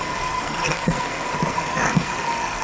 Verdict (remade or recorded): remade